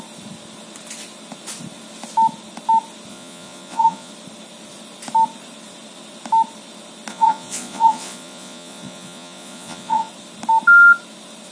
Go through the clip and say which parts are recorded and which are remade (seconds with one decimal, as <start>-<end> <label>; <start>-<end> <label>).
0.0-3.1 recorded; 3.1-4.1 remade; 4.1-7.1 recorded; 7.1-10.1 remade; 10.1-11.5 recorded